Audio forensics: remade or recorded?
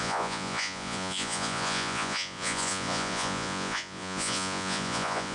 remade